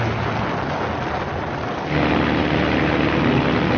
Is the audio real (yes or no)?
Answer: yes